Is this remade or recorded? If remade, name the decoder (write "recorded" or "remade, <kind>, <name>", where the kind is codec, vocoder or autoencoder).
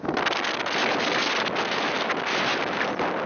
recorded